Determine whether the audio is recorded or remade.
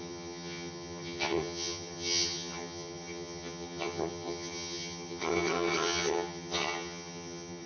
remade